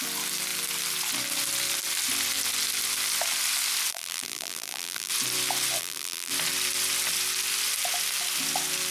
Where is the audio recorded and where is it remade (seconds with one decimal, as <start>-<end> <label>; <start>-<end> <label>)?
0.0-3.9 recorded; 3.9-5.1 remade; 5.1-5.8 recorded; 5.8-6.3 remade; 6.3-8.9 recorded